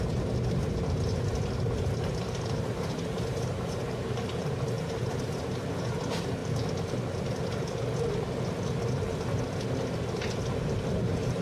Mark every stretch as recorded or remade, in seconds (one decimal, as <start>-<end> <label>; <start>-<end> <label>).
0.0-6.4 remade; 6.4-10.9 recorded; 10.9-11.4 remade